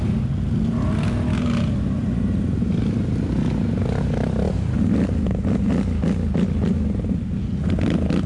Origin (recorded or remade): recorded